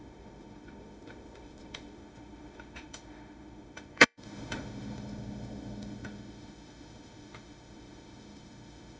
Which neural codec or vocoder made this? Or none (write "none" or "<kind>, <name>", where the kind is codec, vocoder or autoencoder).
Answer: autoencoder, DAC-VAE